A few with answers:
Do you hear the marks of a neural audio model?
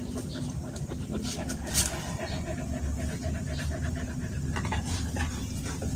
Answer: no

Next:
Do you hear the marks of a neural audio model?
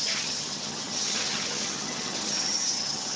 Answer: yes